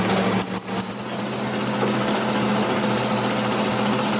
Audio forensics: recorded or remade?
recorded